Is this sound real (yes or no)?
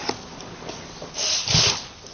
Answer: yes